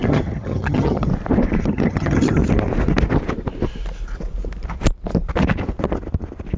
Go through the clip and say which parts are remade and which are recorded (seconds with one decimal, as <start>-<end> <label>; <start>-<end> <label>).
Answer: 0.0-1.1 remade; 1.1-1.6 recorded; 1.6-2.4 remade; 2.4-6.6 recorded